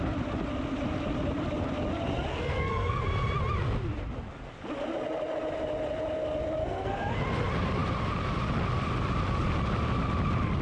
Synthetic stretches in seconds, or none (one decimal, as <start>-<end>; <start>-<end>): 2.3-3.0; 6.6-7.2